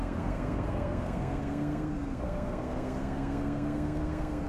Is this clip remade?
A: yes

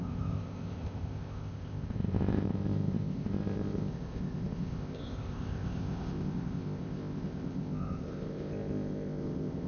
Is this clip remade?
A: yes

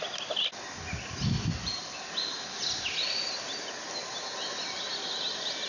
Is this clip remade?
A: no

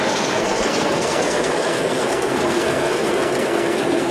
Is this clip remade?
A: yes